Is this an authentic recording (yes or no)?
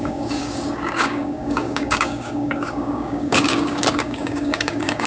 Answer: no